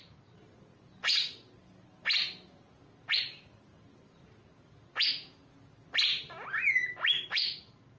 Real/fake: real